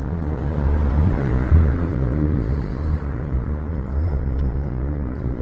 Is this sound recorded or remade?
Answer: remade